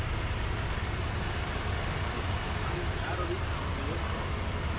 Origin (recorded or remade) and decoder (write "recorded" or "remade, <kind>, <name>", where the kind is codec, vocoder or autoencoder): recorded